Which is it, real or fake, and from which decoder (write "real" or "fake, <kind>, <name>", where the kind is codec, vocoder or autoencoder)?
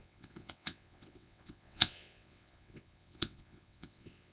fake, vocoder, WaveNeXt